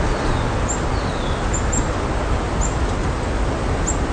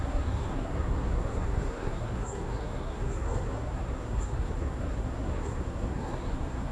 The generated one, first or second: second